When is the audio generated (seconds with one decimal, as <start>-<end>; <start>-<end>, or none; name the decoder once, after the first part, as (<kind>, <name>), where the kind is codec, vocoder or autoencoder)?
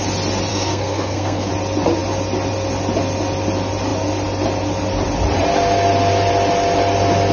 0.5-1.5 (codec, SNAC)